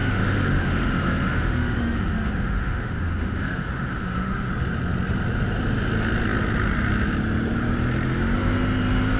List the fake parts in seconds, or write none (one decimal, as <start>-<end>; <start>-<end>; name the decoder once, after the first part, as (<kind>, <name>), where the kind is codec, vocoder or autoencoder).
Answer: 0.0-4.5 (autoencoder, DAC-VAE)